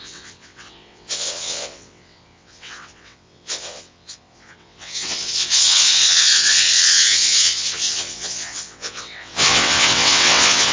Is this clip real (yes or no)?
no